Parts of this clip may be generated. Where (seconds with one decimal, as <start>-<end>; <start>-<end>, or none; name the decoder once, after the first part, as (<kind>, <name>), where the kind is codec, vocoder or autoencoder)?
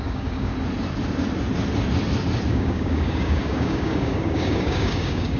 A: 0.0-0.5 (codec, DAC); 2.5-5.4